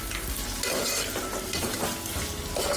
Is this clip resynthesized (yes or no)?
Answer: no